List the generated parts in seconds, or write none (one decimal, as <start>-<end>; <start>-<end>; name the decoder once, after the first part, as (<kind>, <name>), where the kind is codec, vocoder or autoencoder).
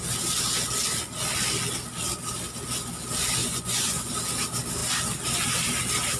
3.4-4.1 (vocoder, Vocos)